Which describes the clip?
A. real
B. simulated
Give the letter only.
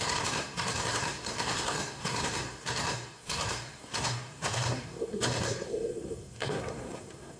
B